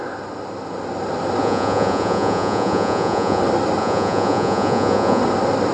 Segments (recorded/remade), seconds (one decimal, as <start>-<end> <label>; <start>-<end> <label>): 0.0-1.4 recorded; 1.4-3.4 remade; 3.4-3.8 recorded; 3.8-5.2 remade; 5.2-5.7 recorded